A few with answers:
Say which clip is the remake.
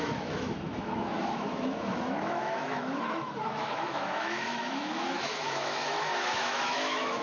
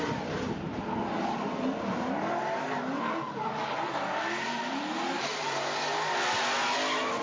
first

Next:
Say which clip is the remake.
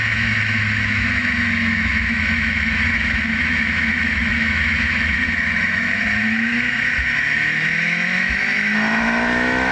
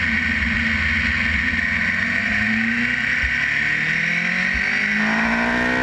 first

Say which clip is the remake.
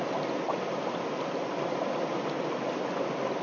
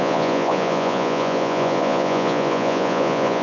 second